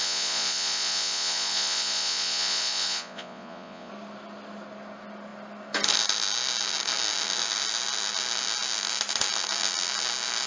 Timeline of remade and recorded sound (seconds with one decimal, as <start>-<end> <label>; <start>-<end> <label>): 0.0-3.9 remade; 3.9-10.5 recorded